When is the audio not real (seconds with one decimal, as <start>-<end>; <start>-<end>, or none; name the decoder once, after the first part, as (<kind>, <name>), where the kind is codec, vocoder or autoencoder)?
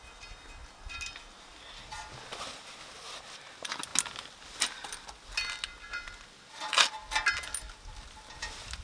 none